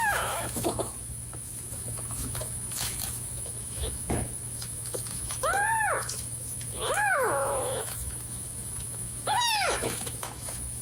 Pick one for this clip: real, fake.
fake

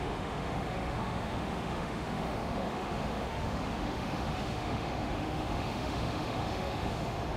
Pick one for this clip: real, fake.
fake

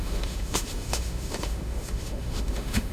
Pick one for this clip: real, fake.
fake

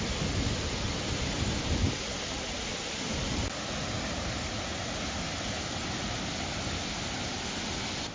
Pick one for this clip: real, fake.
real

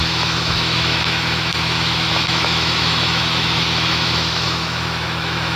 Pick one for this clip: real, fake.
fake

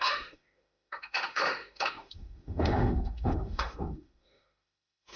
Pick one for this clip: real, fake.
fake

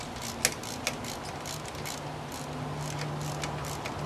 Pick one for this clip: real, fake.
real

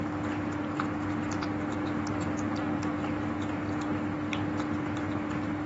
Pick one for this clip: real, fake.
real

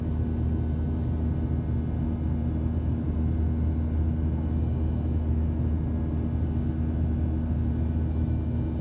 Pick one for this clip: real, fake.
real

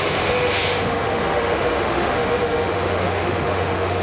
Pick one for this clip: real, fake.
fake